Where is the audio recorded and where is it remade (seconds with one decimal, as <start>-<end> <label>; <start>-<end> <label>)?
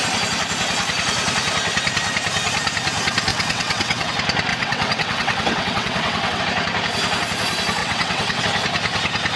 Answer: 0.0-3.3 recorded; 3.3-4.1 remade; 4.1-4.5 recorded; 4.5-6.4 remade; 6.4-7.8 recorded; 7.8-8.4 remade; 8.4-9.4 recorded